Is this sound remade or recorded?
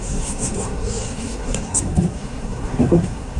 remade